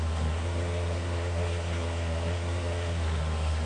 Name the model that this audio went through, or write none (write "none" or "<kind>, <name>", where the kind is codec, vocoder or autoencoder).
codec, SNAC